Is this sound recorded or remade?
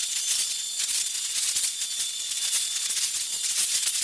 remade